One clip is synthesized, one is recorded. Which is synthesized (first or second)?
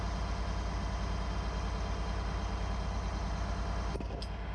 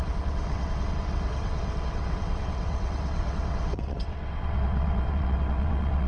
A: second